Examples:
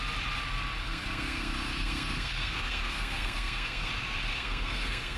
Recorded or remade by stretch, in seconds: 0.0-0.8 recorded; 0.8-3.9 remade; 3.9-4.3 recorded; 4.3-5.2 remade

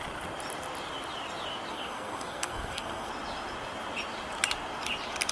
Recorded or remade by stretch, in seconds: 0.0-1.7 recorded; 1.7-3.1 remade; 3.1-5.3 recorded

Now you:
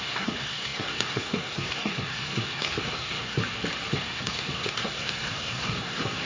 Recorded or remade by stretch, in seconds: 0.0-3.4 remade; 3.4-3.9 recorded; 3.9-6.3 remade